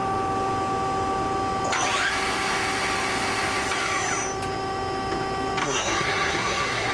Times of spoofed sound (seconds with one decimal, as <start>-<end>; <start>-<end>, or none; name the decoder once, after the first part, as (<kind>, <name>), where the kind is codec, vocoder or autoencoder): 5.6-6.9 (codec, SNAC)